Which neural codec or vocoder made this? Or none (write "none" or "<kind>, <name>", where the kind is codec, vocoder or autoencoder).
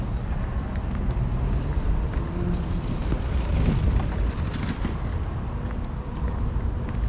none